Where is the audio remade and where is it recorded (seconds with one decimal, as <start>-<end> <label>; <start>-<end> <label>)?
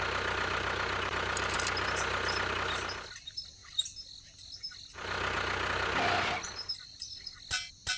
0.0-8.0 recorded